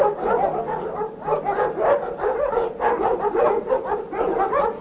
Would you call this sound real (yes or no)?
yes